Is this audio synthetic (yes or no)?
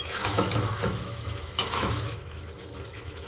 yes